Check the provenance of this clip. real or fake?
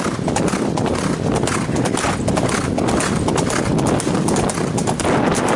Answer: real